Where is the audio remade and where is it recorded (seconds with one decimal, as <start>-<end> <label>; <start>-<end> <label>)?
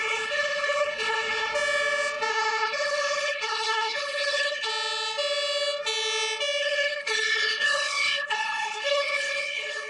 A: 0.0-1.5 remade; 1.5-2.3 recorded; 2.3-4.7 remade; 4.7-6.6 recorded; 6.6-9.9 remade